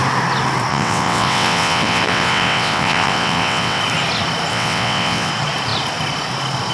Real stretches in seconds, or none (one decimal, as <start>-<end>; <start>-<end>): 0.0-0.7; 3.8-4.5; 5.3-6.7